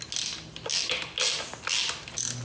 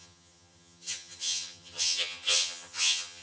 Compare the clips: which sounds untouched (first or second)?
first